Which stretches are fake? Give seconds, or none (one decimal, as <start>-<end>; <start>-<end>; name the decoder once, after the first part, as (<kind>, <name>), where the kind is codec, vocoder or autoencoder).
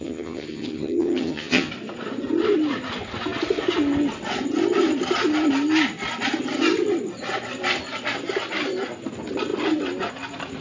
0.0-1.7 (vocoder, HiFi-GAN)